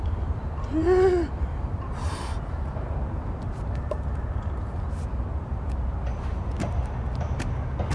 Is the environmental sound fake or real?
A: real